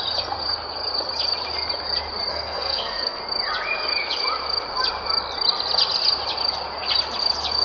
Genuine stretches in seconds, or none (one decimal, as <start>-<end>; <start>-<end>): 0.0-2.3; 3.2-7.6